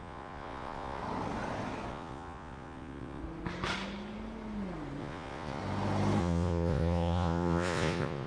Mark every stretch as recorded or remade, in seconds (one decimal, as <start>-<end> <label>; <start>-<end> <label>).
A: 0.0-1.0 remade; 1.0-1.9 recorded; 1.9-3.2 remade; 3.2-5.0 recorded; 5.0-5.6 remade; 5.6-6.2 recorded; 6.2-8.3 remade